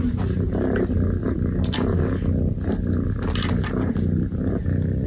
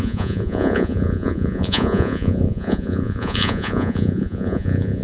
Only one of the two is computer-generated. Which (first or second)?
second